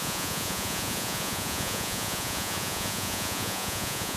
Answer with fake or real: fake